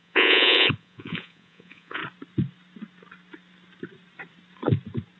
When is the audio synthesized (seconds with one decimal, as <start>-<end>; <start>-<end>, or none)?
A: 0.0-2.0